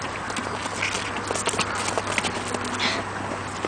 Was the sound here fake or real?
real